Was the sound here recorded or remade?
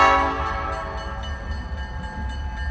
recorded